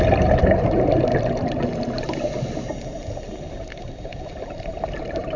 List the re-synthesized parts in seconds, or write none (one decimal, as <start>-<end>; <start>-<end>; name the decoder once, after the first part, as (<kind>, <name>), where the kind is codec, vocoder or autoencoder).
0.0-1.1 (vocoder, BigVGAN v2); 3.5-4.1; 5.0-5.4